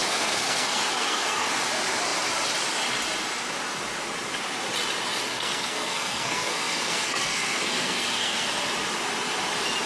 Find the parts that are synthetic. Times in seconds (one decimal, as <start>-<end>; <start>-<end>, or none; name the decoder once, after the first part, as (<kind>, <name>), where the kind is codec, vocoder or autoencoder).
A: 0.0-1.5 (codec, SNAC); 5.3-8.6